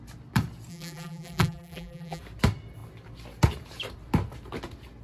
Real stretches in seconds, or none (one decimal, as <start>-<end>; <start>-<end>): 0.0-0.7; 2.2-5.0